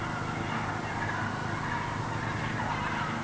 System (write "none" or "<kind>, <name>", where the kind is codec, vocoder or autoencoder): none